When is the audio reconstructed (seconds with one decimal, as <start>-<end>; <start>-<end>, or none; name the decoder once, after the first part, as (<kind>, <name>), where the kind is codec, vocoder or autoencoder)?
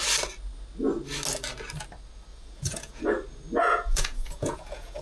2.3-3.0 (vocoder, Vocos); 3.6-5.0